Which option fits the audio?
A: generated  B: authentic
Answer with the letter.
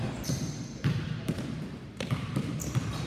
A